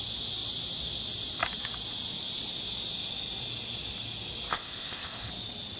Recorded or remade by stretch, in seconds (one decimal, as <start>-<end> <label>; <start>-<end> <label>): 0.0-4.5 recorded; 4.5-5.3 remade; 5.3-5.8 recorded